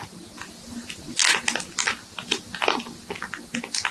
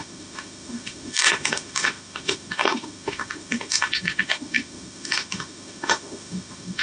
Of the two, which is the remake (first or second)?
second